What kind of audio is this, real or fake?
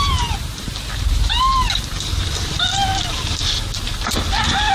real